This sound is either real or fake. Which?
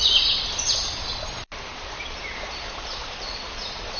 real